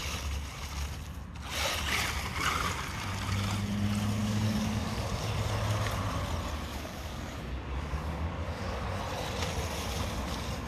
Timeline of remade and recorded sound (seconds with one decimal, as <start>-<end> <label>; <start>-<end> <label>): 0.0-4.2 recorded; 4.2-5.1 remade; 5.1-6.7 recorded; 6.7-9.0 remade; 9.0-10.7 recorded